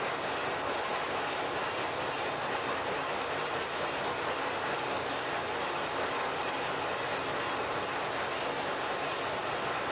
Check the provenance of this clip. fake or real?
real